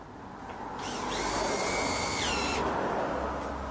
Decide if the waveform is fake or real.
real